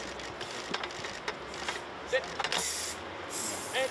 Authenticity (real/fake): real